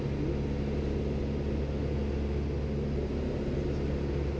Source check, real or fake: real